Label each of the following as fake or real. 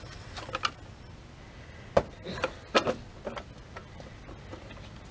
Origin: real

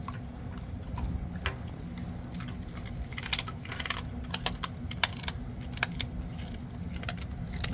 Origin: real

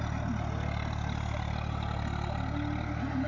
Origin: real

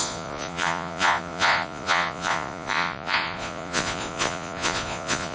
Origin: fake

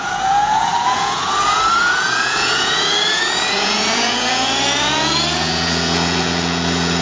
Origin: fake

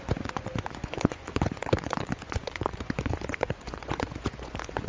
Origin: fake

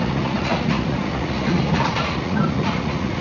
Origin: fake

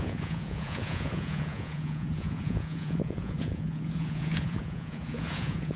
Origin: fake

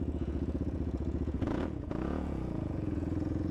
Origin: fake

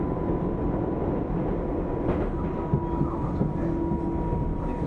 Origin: real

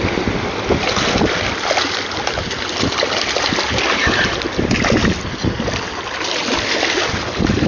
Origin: real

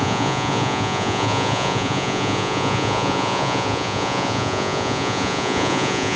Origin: fake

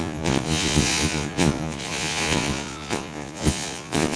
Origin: fake